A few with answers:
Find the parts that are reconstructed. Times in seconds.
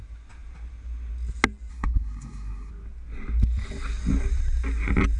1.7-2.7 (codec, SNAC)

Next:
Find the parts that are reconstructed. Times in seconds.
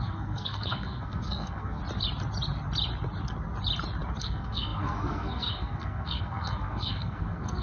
0.0-1.8 (codec, SNAC); 4.2-7.6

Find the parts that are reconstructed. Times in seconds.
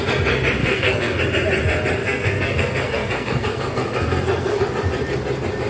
0.6-1.2 (codec, SNAC); 2.0-4.6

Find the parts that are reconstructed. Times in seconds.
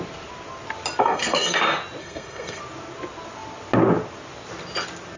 1.0-1.6 (codec, SNAC); 2.0-2.6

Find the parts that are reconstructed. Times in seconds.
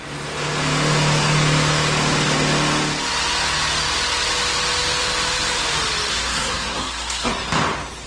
6.1-7.3 (codec, SNAC)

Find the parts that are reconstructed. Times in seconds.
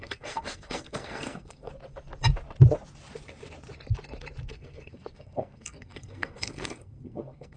0.0-1.7 (codec, SNAC); 4.5-7.6